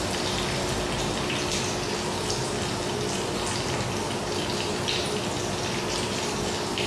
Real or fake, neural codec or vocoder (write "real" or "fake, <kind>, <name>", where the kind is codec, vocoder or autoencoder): real